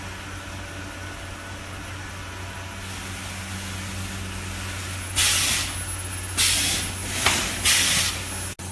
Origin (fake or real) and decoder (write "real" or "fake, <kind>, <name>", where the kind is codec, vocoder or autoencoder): real